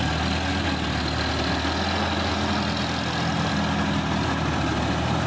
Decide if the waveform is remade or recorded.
recorded